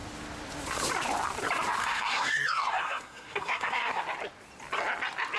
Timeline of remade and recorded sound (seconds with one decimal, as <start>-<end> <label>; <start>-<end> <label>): 0.0-1.8 recorded; 1.8-4.0 remade; 4.0-5.4 recorded